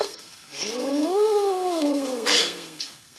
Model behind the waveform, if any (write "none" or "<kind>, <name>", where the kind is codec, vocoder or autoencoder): codec, SNAC